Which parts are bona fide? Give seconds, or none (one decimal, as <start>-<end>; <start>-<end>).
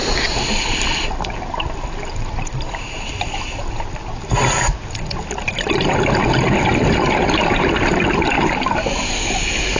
0.0-9.8